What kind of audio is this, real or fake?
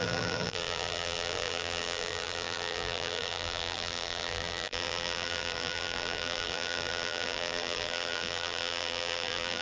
fake